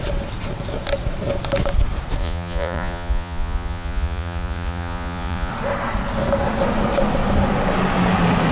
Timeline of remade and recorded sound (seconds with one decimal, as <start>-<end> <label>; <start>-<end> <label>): 0.0-2.2 recorded; 2.2-5.5 remade; 5.5-8.5 recorded

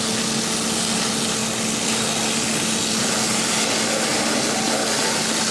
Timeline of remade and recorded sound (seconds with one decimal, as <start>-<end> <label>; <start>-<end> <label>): 0.0-5.5 recorded